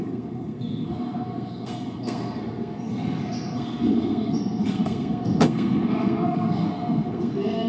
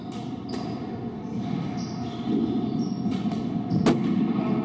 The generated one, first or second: first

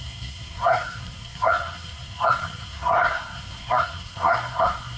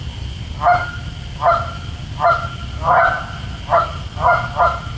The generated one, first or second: first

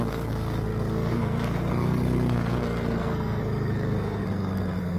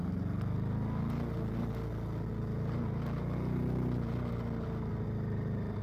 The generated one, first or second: first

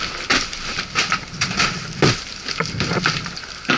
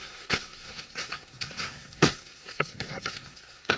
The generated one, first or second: second